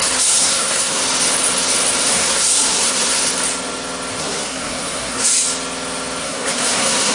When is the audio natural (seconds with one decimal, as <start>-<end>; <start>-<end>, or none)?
1.0-2.1; 3.2-4.2; 5.3-6.2